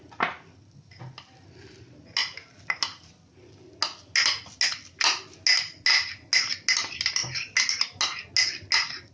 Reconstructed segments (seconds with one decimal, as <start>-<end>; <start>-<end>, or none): none

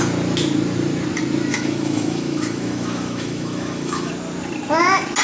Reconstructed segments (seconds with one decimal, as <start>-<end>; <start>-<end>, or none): 1.5-4.1

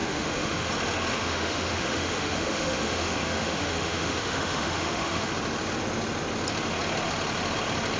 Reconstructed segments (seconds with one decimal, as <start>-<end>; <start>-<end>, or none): 0.0-0.7; 1.1-5.3

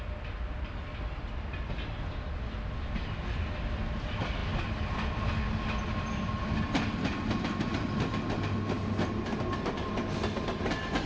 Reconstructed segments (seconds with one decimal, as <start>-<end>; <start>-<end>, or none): none

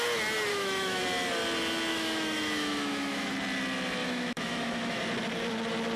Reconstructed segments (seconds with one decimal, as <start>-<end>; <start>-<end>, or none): 0.5-1.0; 1.9-3.3; 4.0-5.0

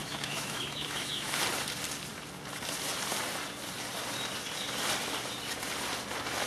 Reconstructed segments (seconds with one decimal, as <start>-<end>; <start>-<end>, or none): 0.0-1.4

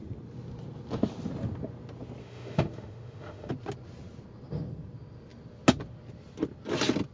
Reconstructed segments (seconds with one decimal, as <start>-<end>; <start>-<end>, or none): 2.2-3.5